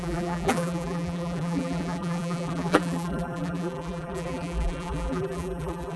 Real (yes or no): no